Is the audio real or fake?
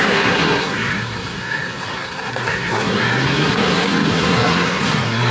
fake